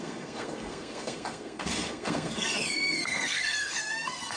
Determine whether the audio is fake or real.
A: fake